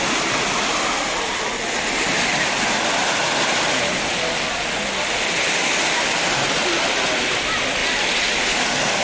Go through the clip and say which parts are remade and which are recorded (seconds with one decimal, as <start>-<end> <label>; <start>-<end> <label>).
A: 0.0-9.0 recorded